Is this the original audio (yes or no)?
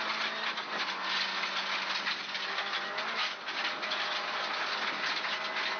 yes